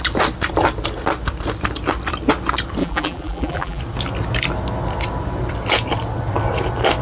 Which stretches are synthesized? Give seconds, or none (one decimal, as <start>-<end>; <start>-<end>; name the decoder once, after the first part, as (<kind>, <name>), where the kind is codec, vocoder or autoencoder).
2.8-3.8 (vocoder, BigVGAN v2)